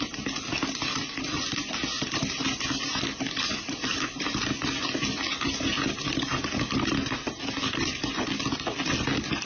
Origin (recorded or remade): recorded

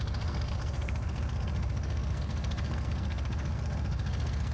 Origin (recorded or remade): remade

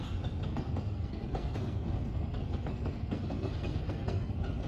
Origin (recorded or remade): remade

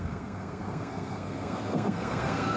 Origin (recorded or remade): remade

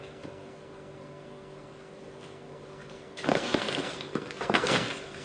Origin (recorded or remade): remade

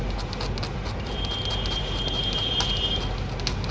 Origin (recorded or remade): recorded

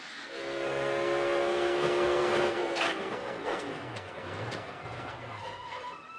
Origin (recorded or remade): remade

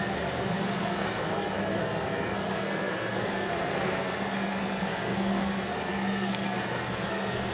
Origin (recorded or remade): remade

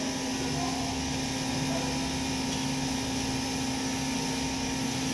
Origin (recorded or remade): recorded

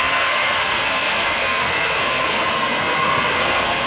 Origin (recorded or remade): remade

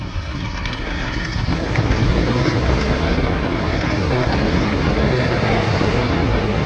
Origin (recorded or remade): remade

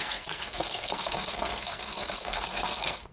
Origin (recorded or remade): remade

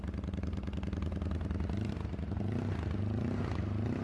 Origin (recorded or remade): recorded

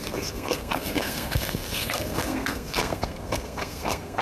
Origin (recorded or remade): remade